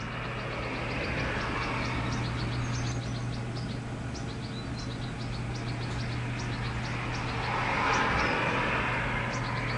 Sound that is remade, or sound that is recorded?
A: recorded